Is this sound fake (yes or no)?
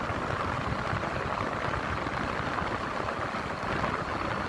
no